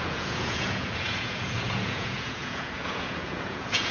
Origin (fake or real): fake